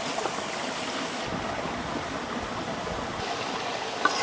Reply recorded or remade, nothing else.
recorded